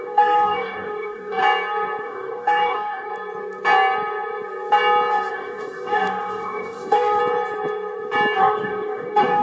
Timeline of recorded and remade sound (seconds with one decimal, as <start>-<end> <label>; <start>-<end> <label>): 0.0-1.4 remade; 1.4-2.0 recorded; 2.0-3.1 remade; 3.1-5.3 recorded; 5.3-7.2 remade; 7.2-8.4 recorded; 8.4-9.4 remade